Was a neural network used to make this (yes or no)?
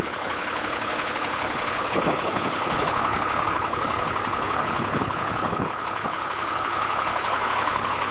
yes